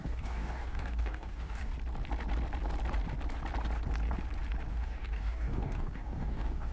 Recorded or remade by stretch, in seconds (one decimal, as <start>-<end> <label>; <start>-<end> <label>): 0.0-1.7 remade; 1.7-4.7 recorded; 4.7-6.7 remade